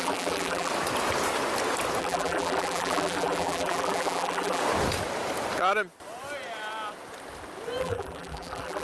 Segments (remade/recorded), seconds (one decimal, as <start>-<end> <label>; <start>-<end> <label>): 0.0-0.7 remade; 0.7-2.0 recorded; 2.0-4.6 remade; 4.6-7.8 recorded; 7.8-8.8 remade